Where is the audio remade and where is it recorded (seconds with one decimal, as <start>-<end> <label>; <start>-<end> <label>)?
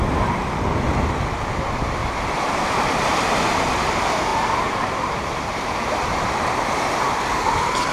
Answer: 0.0-2.0 recorded; 2.0-3.4 remade; 3.4-4.3 recorded; 4.3-6.6 remade; 6.6-7.9 recorded